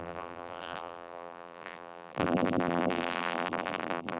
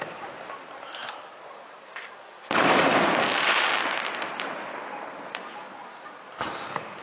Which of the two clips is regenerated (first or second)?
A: first